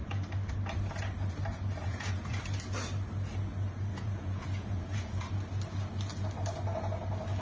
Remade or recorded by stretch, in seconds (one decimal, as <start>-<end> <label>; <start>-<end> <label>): 0.0-1.8 recorded; 1.8-2.4 remade; 2.4-3.9 recorded; 3.9-5.3 remade; 5.3-7.4 recorded